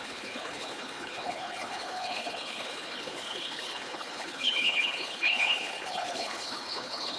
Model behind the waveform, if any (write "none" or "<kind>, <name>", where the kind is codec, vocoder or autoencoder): codec, HILCodec